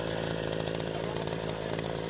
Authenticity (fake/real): fake